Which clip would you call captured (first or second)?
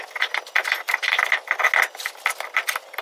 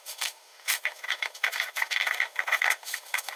first